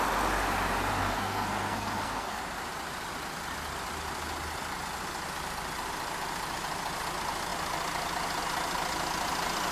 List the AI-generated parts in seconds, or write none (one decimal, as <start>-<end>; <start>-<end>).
1.0-2.4